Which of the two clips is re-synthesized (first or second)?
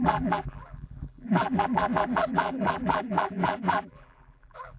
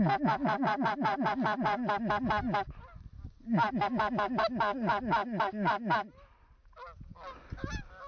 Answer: first